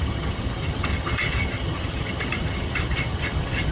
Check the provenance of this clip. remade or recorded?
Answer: remade